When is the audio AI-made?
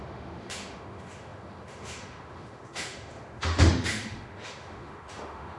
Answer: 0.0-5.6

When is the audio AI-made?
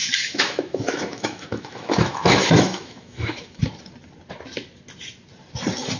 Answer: 0.0-3.6